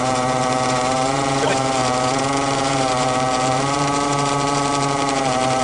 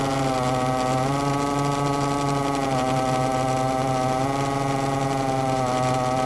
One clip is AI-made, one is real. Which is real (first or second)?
second